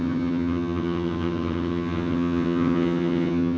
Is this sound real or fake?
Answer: fake